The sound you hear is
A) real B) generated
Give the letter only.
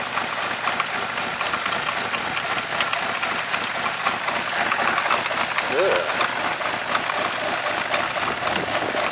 A